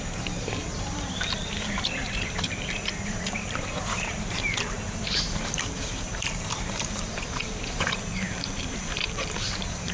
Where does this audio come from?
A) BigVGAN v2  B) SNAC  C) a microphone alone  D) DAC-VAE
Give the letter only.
A